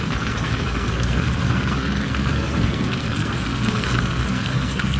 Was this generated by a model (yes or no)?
yes